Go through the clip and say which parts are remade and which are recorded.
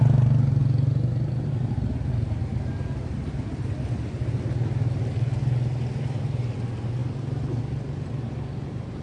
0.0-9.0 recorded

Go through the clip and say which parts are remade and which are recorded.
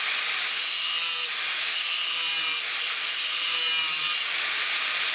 0.0-5.1 recorded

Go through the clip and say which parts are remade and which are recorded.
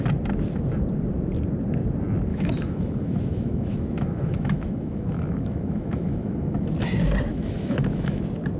0.0-2.3 recorded; 2.3-6.7 remade; 6.7-7.3 recorded; 7.3-8.2 remade; 8.2-8.6 recorded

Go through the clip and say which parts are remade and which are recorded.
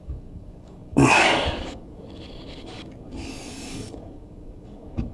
0.0-5.1 remade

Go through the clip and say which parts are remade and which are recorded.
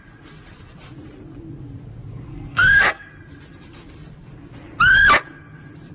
0.0-2.3 recorded; 2.3-3.1 remade; 3.1-5.9 recorded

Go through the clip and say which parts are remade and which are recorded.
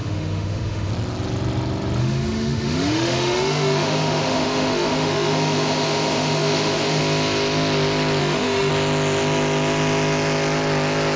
0.0-0.9 remade; 0.9-2.0 recorded; 2.0-7.0 remade; 7.0-8.2 recorded; 8.2-8.7 remade; 8.7-11.2 recorded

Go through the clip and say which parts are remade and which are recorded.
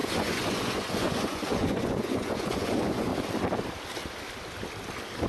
0.0-3.1 remade; 3.1-5.3 recorded